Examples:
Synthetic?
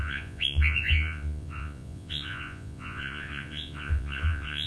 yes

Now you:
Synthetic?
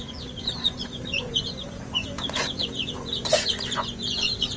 yes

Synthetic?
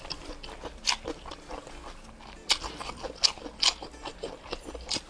no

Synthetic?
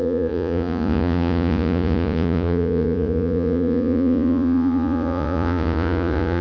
yes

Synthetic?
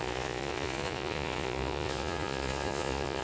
yes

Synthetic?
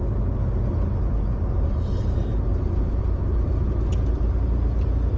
no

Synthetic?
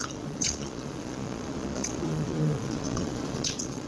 yes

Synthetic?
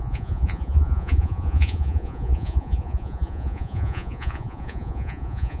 yes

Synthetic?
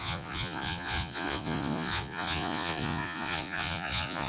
yes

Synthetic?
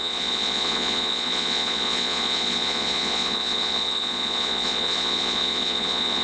yes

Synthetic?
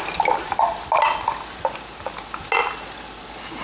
no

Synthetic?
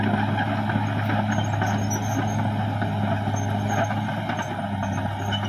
no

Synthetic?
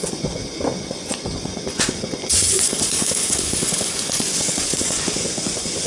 yes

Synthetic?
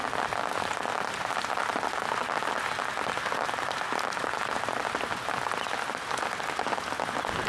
no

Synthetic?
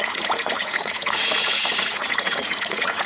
yes